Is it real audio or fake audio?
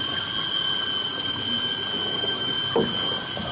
real